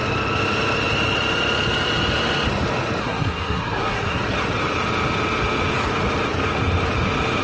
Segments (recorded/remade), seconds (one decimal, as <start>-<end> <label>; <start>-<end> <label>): 0.0-3.0 recorded; 3.0-4.2 remade; 4.2-7.4 recorded